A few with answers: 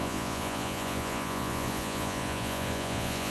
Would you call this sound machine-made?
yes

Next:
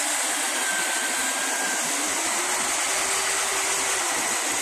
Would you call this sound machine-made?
no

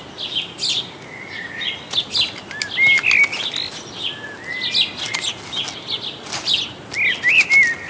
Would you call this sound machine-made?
no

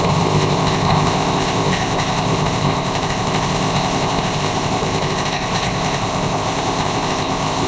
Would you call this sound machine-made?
yes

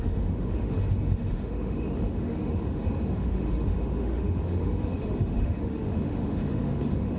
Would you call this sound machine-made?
yes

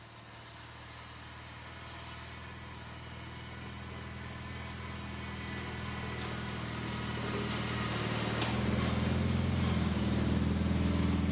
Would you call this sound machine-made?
no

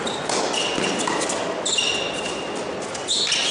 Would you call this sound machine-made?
no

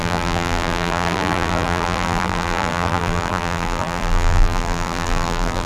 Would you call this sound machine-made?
yes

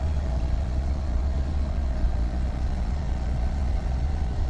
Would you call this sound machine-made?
yes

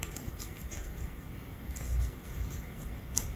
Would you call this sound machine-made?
yes